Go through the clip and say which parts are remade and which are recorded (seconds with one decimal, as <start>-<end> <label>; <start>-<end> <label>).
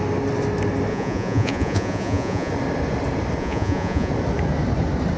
0.0-0.9 recorded; 0.9-2.5 remade; 2.5-3.4 recorded; 3.4-4.1 remade; 4.1-5.2 recorded